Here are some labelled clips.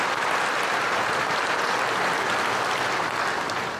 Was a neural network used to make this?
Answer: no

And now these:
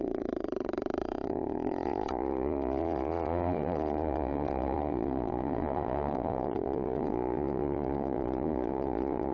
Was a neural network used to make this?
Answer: yes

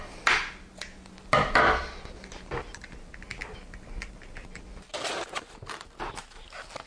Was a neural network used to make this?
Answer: no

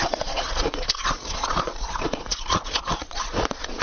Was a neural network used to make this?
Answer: yes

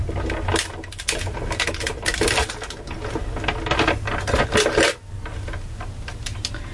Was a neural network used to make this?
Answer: no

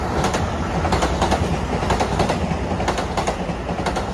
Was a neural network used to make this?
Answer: no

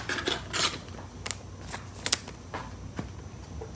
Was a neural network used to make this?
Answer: no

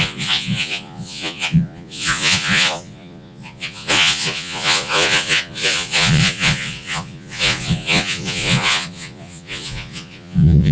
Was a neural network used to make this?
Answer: yes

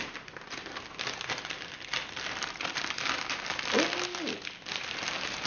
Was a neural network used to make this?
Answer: no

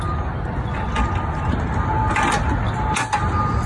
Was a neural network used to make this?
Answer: no